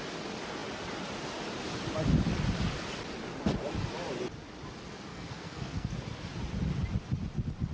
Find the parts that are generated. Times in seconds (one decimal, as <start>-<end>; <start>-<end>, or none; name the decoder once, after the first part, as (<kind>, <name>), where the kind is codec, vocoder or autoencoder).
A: 5.1-5.9 (codec, SNAC)